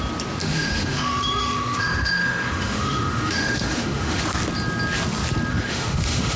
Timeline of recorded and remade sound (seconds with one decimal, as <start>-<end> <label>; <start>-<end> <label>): 0.0-0.4 recorded; 0.4-4.2 remade; 4.2-5.5 recorded; 5.5-6.4 remade